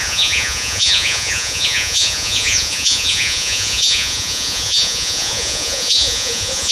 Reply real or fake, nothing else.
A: fake